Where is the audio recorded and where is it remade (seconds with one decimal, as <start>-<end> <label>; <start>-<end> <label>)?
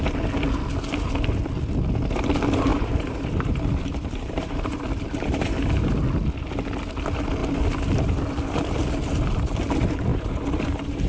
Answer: 0.0-2.7 recorded; 2.7-5.9 remade; 5.9-10.1 recorded; 10.1-11.1 remade